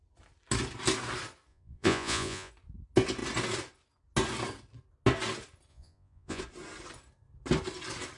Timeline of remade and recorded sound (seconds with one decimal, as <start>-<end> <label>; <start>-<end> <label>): 0.0-1.5 recorded; 1.5-2.5 remade; 2.5-5.7 recorded; 5.7-6.4 remade; 6.4-8.2 recorded